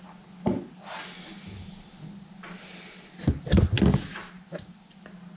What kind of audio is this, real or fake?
real